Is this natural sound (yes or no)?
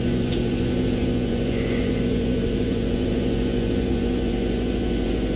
no